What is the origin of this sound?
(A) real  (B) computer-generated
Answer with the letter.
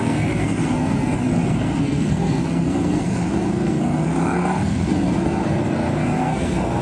B